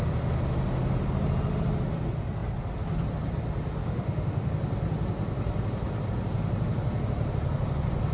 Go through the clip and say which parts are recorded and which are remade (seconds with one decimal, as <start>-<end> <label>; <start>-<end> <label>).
0.0-3.8 recorded; 3.8-4.5 remade; 4.5-8.1 recorded